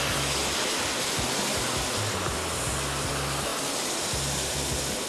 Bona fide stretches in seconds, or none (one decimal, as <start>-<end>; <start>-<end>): 0.0-5.1